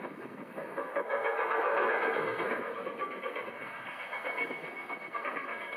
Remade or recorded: remade